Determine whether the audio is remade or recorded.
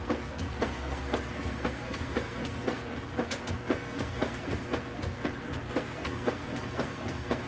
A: remade